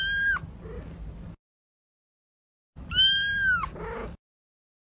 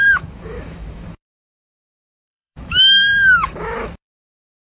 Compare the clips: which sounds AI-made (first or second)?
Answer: second